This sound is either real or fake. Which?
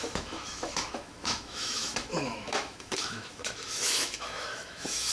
fake